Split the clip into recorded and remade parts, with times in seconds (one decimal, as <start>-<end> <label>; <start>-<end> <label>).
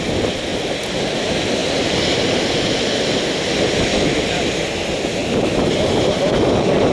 0.0-0.5 recorded; 0.5-1.2 remade; 1.2-1.6 recorded; 1.6-2.2 remade; 2.2-5.2 recorded; 5.2-6.3 remade; 6.3-6.9 recorded